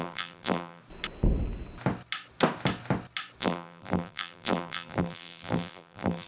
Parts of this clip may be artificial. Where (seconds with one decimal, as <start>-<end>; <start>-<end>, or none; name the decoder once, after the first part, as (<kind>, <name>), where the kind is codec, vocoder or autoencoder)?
0.0-0.8 (vocoder, BigVGAN v2); 3.4-6.3